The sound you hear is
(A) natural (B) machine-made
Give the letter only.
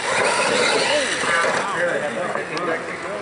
A